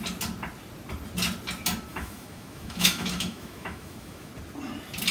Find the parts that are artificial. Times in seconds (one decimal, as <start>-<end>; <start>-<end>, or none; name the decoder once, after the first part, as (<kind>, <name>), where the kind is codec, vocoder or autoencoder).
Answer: 1.9-4.3 (autoencoder, DAC-VAE)